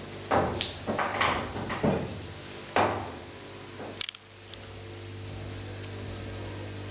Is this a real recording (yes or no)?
yes